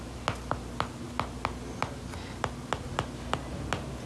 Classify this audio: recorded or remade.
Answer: recorded